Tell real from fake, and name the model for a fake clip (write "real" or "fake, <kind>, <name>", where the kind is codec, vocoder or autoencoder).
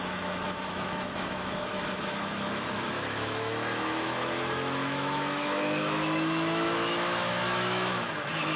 fake, autoencoder, DAC-VAE